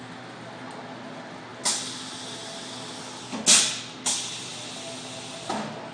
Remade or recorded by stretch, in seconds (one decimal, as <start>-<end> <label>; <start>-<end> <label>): 0.0-5.9 recorded